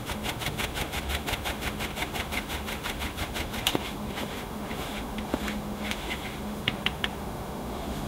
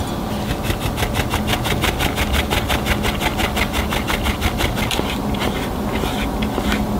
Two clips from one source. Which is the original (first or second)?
second